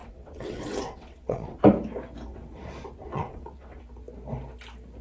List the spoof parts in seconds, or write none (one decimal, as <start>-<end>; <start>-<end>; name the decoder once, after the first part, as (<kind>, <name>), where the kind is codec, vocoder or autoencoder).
0.0-1.6 (vocoder, WaveNeXt); 2.3-3.8